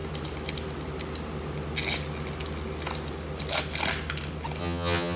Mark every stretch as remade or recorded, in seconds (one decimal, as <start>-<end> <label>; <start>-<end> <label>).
0.0-4.6 recorded; 4.6-5.2 remade